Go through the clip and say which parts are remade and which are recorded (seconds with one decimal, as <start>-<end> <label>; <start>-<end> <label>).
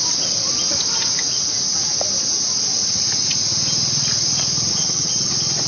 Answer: 0.0-4.7 recorded; 4.7-5.3 remade; 5.3-5.7 recorded